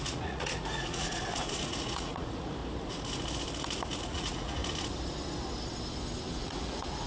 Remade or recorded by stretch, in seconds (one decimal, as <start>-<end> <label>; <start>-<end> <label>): 0.0-2.6 remade; 2.6-4.0 recorded; 4.0-4.6 remade; 4.6-6.4 recorded; 6.4-7.1 remade